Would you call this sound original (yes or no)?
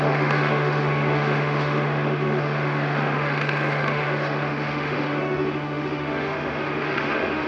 no